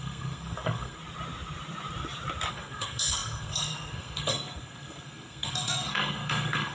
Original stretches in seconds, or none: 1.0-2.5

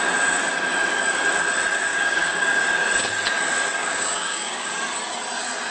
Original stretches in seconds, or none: 0.0-1.9; 2.6-3.8; 4.7-5.7